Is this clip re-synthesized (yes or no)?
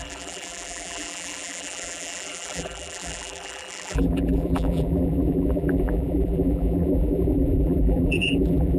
yes